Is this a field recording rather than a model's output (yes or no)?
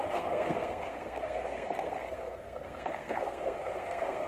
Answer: no